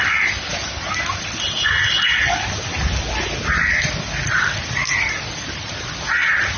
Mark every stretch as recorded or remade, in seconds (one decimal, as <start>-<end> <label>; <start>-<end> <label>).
0.0-4.6 recorded; 4.6-6.0 remade; 6.0-6.6 recorded